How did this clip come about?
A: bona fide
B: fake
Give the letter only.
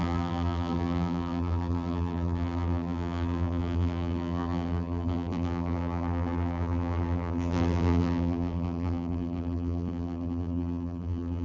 B